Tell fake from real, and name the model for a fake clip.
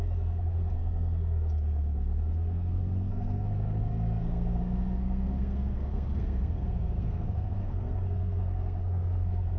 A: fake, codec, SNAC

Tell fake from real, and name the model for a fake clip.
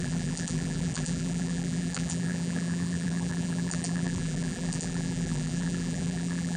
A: fake, vocoder, BigVGAN v2